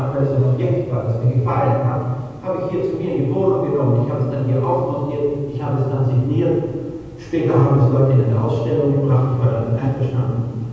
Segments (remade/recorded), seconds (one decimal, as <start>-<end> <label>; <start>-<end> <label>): 0.0-2.1 remade; 2.1-6.8 recorded; 6.8-10.7 remade

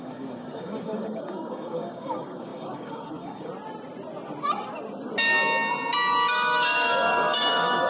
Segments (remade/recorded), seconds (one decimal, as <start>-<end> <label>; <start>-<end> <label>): 0.0-3.5 remade; 3.5-6.3 recorded; 6.3-7.9 remade

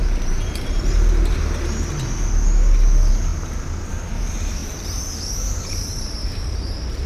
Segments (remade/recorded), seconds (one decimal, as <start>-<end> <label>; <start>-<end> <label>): 0.0-1.9 remade; 1.9-4.6 recorded; 4.6-7.1 remade

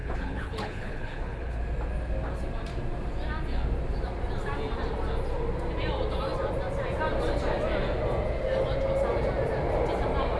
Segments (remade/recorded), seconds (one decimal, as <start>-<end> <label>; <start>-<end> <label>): 0.0-1.6 remade; 1.6-10.4 recorded

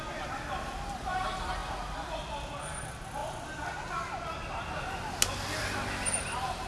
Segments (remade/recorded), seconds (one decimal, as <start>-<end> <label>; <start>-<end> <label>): 0.0-6.7 recorded